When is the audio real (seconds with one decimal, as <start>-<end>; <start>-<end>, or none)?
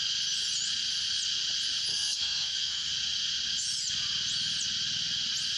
0.0-1.9; 2.9-5.6